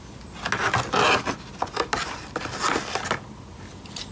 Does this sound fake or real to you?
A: real